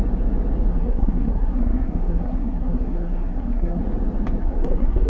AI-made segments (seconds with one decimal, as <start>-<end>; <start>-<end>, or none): 0.7-3.8; 4.4-5.1